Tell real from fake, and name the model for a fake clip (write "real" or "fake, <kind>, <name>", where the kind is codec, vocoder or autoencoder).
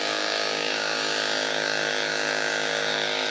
fake, codec, DAC